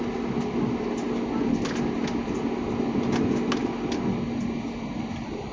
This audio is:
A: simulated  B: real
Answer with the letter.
B